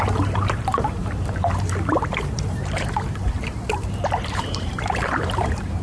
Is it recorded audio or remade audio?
remade